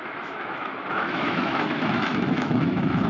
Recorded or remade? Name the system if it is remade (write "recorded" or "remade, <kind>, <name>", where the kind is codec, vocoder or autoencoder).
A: remade, autoencoder, DAC-VAE